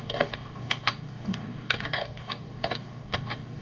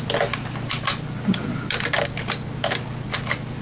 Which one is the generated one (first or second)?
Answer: first